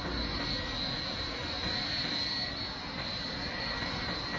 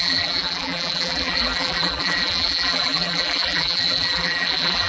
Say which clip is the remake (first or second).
second